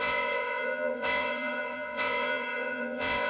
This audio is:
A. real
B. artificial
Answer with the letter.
B